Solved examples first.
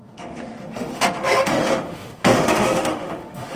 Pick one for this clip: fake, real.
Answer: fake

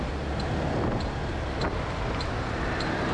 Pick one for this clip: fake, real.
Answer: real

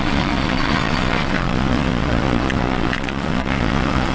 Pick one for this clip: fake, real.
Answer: fake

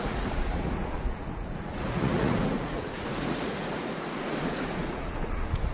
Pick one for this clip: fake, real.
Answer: fake